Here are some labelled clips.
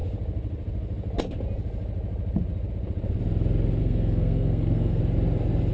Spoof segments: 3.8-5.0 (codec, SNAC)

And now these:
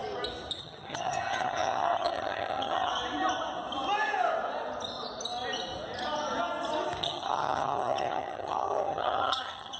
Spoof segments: 0.6-2.9 (vocoder, HiFi-GAN); 7.0-9.8

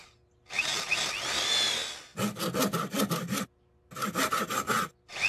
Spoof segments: none

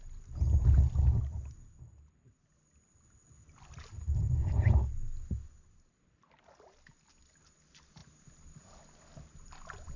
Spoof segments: none

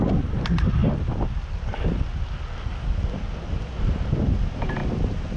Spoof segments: none